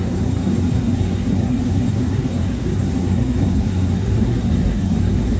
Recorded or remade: remade